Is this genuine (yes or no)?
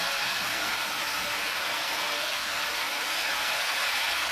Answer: no